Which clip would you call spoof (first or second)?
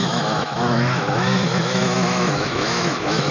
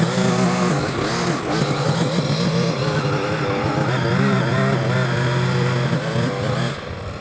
first